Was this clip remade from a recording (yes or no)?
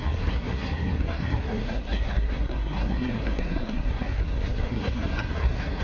yes